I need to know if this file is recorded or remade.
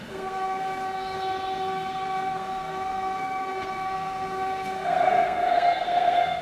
remade